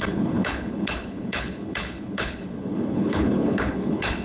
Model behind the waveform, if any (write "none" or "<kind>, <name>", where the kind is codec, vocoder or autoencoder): codec, HILCodec